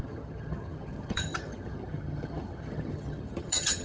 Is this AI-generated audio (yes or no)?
yes